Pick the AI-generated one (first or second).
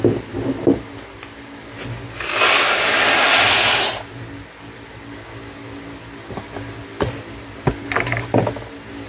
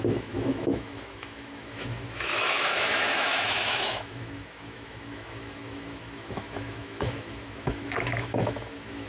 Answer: second